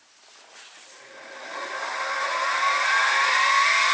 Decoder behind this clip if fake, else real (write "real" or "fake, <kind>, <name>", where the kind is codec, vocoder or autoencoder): real